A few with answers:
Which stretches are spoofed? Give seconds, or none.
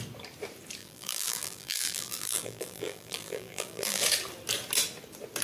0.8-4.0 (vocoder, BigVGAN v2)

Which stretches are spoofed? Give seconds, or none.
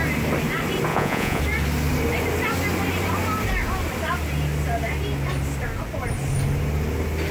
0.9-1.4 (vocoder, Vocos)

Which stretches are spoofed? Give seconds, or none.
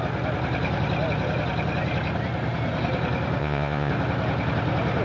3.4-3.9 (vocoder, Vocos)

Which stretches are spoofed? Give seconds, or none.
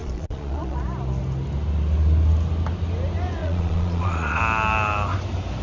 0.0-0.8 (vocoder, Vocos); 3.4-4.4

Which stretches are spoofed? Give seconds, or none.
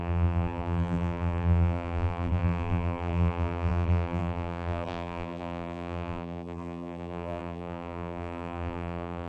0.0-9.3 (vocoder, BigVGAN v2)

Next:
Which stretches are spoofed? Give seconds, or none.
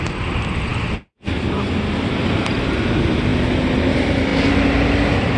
none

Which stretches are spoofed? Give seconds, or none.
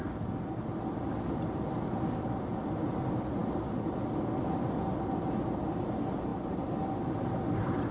none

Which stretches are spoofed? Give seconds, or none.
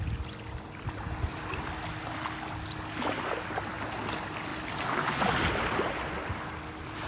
none